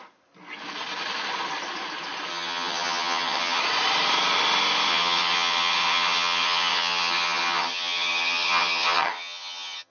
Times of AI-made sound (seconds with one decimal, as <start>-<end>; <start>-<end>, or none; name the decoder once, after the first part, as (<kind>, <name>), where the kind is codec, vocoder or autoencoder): 2.3-3.6 (vocoder, HiFi-GAN); 4.9-9.9